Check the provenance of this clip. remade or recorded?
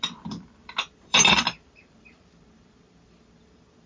remade